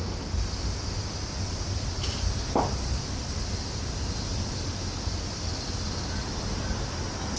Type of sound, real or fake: real